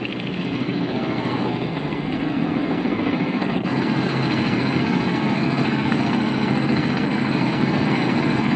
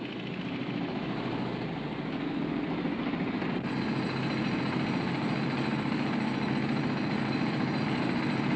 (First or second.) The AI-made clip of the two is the first